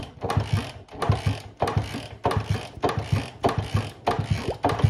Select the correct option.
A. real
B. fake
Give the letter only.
A